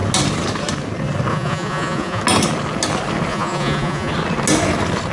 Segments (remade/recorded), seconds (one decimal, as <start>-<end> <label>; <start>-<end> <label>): 0.0-1.3 recorded; 1.3-2.2 remade; 2.2-3.3 recorded; 3.3-4.1 remade; 4.1-5.1 recorded

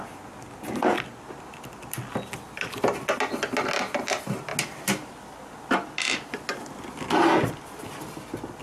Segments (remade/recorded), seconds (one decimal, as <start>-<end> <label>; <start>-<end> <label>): 0.0-8.6 recorded

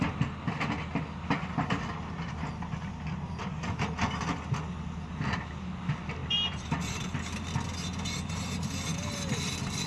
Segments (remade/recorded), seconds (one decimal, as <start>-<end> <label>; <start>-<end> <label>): 0.0-6.2 recorded; 6.2-6.9 remade; 6.9-8.9 recorded; 8.9-9.9 remade